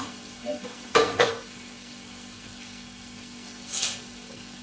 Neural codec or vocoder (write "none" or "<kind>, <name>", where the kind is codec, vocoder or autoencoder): codec, SNAC